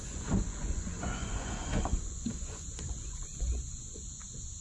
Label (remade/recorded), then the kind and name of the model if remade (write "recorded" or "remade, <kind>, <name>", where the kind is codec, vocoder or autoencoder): remade, vocoder, Vocos